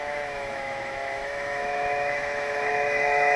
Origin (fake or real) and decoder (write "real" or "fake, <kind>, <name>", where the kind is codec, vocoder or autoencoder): fake, autoencoder, DAC-VAE